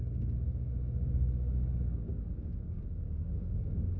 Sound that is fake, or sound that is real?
fake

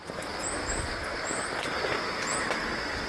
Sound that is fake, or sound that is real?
real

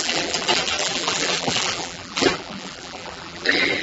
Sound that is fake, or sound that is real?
fake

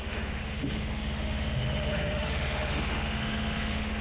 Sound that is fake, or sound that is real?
fake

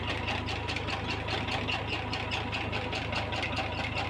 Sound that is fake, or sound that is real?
real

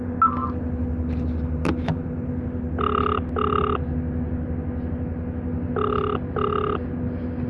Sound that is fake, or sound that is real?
real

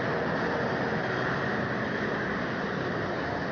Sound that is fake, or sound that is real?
real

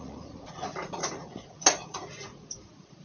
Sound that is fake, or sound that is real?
fake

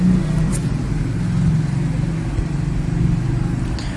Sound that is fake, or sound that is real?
real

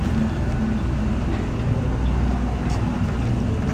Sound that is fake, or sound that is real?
real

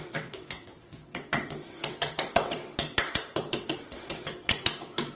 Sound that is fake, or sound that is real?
fake